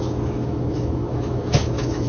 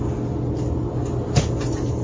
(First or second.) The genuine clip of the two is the second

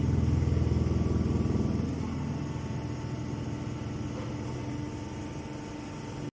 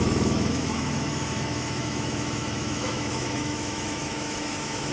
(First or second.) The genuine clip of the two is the first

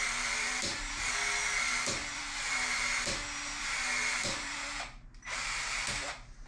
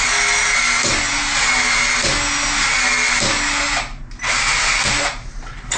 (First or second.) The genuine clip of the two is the second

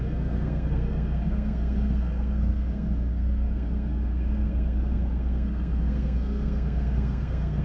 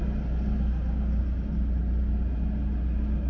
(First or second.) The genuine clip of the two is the second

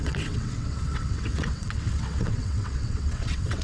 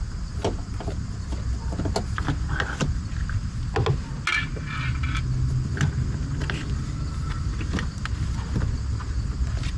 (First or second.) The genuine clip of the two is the second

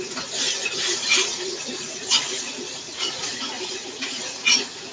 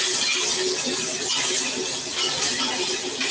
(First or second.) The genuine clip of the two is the second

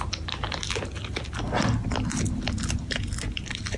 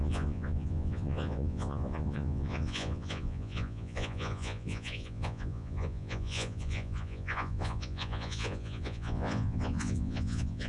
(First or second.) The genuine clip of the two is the first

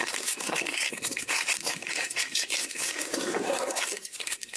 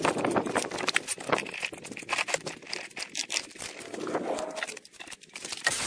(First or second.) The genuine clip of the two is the second